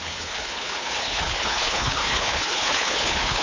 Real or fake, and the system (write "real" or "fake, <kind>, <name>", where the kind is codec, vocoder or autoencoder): fake, codec, HILCodec